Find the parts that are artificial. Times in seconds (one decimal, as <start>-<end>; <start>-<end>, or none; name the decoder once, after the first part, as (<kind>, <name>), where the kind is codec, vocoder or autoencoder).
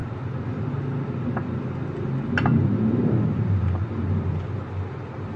3.2-5.4 (vocoder, BigVGAN v2)